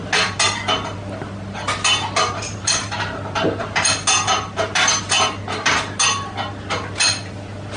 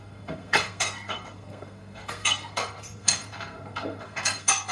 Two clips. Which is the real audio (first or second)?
first